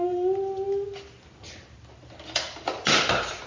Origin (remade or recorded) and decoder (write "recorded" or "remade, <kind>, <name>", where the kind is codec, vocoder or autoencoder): recorded